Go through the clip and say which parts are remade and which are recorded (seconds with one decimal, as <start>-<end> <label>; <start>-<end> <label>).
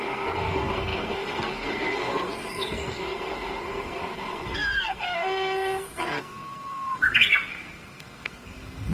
0.0-8.9 remade